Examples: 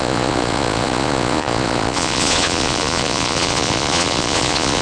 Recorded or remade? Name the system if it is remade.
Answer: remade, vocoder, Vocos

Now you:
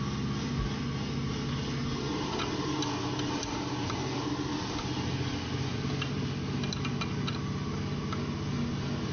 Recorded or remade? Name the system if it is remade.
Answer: recorded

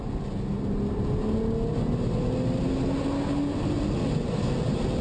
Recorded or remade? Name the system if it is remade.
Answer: recorded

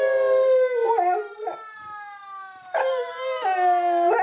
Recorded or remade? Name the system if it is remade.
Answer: recorded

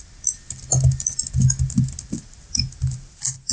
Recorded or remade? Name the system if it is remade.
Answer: recorded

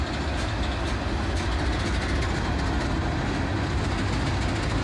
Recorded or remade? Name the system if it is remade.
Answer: recorded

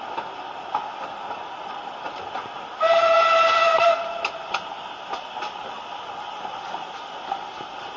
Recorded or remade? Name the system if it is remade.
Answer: recorded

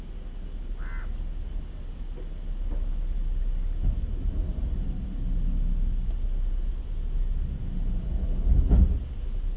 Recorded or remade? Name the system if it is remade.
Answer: recorded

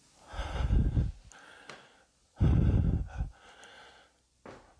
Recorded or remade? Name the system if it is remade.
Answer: recorded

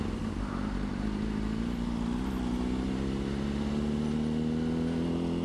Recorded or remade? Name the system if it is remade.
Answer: recorded